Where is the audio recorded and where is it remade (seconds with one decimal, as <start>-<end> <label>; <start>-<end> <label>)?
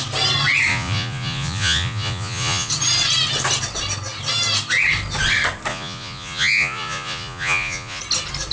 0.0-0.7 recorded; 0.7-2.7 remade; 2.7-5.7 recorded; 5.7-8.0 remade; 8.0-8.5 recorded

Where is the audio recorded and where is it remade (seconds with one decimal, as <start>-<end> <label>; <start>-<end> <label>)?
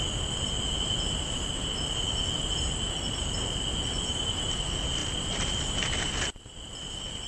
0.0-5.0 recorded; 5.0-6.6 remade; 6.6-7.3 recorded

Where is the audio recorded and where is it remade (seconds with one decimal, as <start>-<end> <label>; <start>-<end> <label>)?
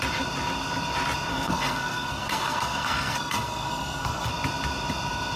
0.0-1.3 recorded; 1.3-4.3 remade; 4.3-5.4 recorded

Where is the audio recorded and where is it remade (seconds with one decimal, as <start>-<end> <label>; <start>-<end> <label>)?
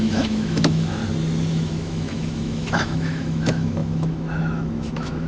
0.0-1.0 remade; 1.0-1.5 recorded; 1.5-5.3 remade